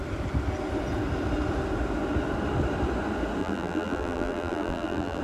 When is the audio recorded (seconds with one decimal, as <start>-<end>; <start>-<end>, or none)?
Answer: 0.0-3.4